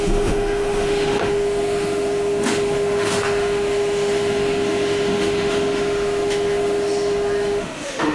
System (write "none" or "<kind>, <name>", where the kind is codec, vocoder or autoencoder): autoencoder, DAC-VAE